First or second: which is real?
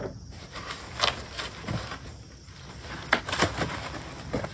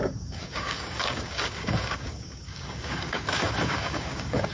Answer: first